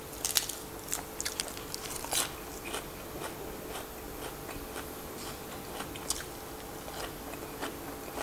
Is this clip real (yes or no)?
yes